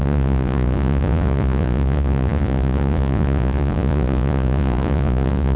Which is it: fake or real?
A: fake